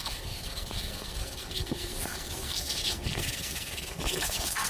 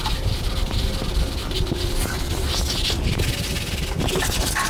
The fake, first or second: first